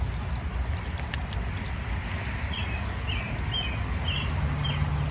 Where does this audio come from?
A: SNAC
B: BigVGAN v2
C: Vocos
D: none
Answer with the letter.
D